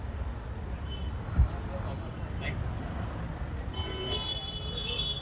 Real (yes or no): yes